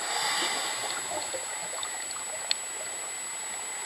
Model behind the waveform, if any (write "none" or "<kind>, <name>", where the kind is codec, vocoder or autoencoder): none